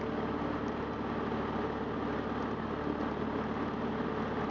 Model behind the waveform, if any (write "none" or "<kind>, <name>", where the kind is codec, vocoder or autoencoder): none